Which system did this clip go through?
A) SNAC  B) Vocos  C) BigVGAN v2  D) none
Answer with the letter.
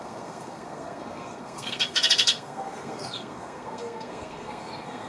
A